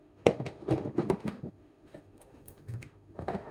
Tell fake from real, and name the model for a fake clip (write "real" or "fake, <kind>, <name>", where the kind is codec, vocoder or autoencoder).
fake, autoencoder, DAC-VAE